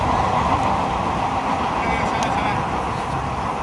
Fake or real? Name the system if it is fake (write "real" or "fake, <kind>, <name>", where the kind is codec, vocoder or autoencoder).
real